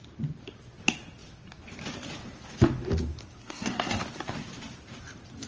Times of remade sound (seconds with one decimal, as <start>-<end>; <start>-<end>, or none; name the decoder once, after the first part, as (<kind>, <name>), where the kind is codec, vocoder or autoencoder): 3.4-4.0 (codec, SNAC)